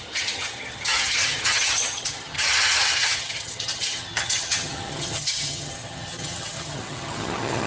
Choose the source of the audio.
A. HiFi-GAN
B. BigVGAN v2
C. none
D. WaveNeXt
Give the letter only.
A